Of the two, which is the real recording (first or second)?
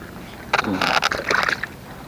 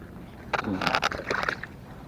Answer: first